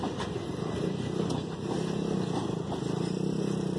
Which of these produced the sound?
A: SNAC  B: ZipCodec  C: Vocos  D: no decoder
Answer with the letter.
D